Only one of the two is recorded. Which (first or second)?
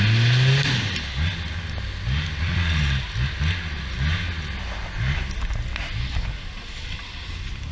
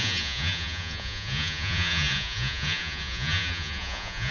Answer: first